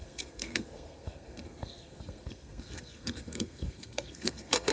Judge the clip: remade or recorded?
remade